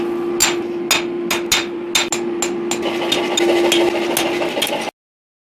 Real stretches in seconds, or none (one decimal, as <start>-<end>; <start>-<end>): 0.0-5.4